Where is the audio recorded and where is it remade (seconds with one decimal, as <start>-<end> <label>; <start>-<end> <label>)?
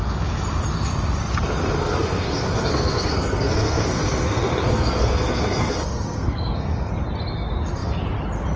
0.0-1.8 recorded; 1.8-6.9 remade; 6.9-8.6 recorded